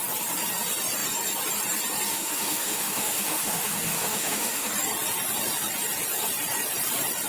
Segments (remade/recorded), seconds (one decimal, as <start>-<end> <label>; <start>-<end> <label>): 0.0-2.1 recorded; 2.1-4.7 remade; 4.7-7.3 recorded